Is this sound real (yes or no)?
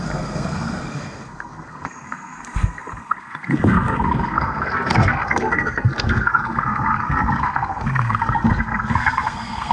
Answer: no